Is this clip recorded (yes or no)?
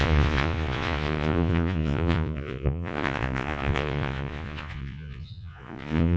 no